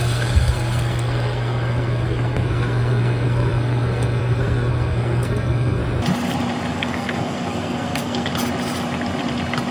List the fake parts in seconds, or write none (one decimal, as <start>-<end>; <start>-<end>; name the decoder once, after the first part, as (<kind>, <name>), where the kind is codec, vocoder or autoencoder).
0.0-5.8 (codec, SNAC); 6.7-8.3